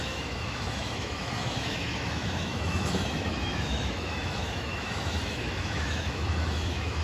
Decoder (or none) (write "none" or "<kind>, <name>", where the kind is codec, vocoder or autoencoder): autoencoder, DAC-VAE